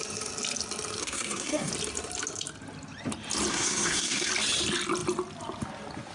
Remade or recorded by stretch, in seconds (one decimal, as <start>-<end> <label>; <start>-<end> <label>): 0.0-1.0 recorded; 1.0-1.7 remade; 1.7-3.5 recorded; 3.5-4.3 remade; 4.3-6.1 recorded